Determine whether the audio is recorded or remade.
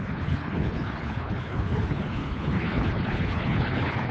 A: remade